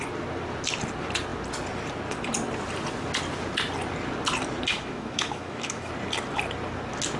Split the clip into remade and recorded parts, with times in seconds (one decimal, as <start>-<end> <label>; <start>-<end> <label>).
0.0-4.7 recorded; 4.7-5.9 remade; 5.9-7.2 recorded